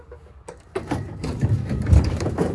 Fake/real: fake